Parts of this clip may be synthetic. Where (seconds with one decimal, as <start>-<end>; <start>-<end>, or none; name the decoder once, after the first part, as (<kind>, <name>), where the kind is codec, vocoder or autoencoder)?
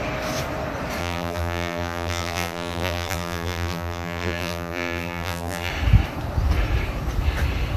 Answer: 1.0-5.7 (vocoder, BigVGAN v2)